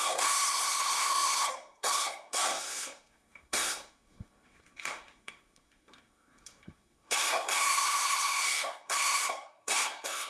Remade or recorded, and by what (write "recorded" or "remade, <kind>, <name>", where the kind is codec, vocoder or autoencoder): remade, codec, SNAC